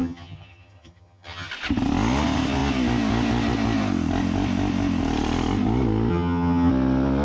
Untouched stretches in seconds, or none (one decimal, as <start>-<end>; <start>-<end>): 1.5-6.1; 6.7-7.2